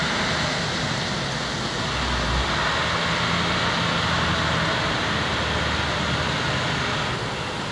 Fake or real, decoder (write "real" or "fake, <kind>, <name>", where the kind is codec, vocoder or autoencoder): real